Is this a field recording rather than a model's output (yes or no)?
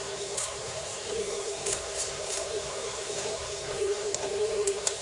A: no